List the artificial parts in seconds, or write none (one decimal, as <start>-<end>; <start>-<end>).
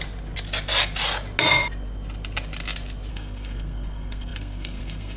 3.1-5.2